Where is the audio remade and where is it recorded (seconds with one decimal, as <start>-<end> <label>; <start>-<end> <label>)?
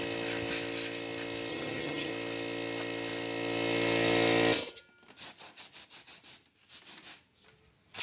0.0-1.5 recorded; 1.5-2.1 remade; 2.1-8.0 recorded